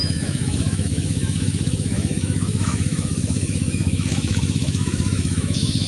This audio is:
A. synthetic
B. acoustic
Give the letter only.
A